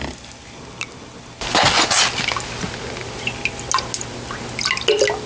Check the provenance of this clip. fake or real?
real